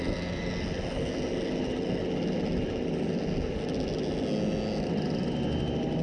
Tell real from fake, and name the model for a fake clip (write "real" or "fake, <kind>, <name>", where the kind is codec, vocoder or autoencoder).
real